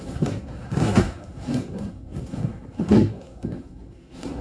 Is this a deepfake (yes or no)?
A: yes